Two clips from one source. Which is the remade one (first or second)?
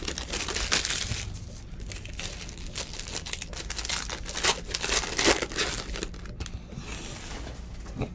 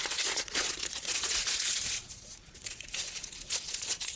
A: second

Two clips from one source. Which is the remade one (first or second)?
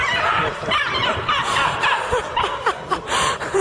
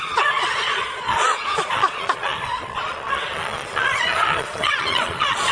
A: second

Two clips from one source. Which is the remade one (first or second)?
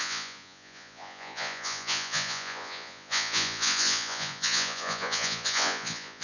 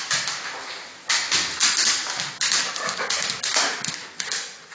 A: first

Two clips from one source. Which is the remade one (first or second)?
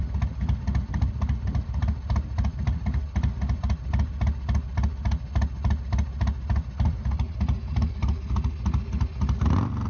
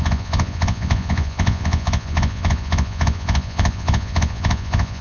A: second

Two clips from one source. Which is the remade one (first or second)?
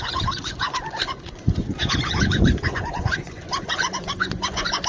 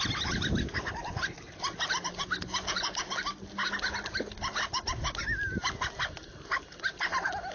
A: first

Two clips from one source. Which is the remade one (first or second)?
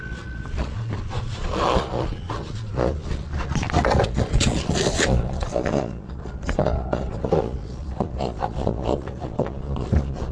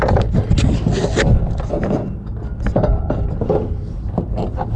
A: first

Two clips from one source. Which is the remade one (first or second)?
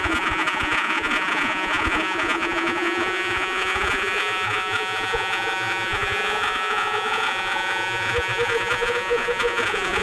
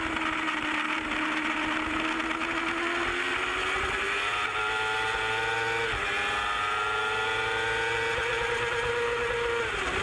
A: first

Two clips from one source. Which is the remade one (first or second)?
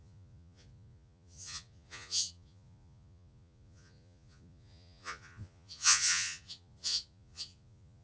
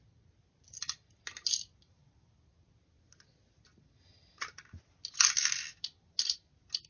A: first